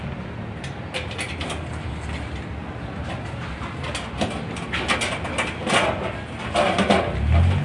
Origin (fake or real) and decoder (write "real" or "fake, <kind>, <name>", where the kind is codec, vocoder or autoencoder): real